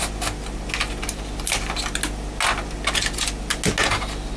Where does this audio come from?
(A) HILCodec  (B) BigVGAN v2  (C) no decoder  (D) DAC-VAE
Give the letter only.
C